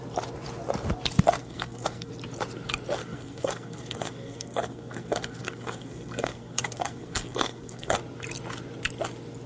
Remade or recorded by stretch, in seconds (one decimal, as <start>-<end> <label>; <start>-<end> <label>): 0.0-1.4 recorded; 1.4-2.1 remade; 2.1-3.0 recorded; 3.0-8.0 remade; 8.0-9.5 recorded